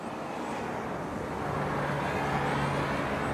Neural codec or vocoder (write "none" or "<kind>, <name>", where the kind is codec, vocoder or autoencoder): none